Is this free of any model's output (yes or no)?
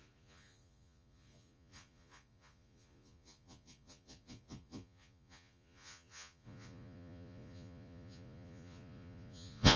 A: no